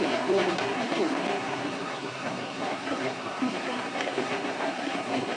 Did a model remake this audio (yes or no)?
yes